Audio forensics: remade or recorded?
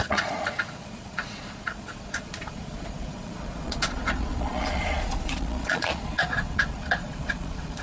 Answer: remade